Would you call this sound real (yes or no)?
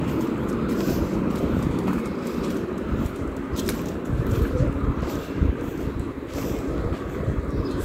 yes